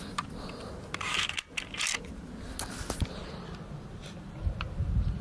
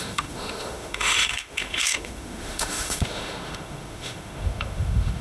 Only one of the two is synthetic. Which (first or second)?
second